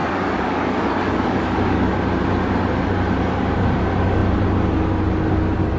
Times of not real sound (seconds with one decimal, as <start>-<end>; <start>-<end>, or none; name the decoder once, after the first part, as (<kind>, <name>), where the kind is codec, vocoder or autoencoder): 0.0-2.0 (codec, DAC)